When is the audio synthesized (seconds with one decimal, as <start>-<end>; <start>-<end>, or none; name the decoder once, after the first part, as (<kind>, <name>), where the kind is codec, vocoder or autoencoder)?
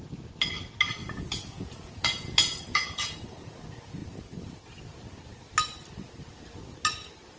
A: 1.0-3.2 (vocoder, Vocos)